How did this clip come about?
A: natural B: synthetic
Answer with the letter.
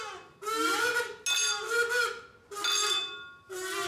A